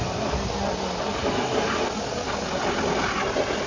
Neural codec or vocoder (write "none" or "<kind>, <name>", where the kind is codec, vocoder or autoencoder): none